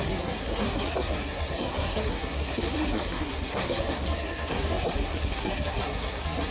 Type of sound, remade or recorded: remade